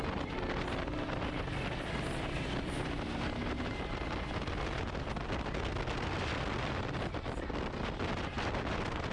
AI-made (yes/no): yes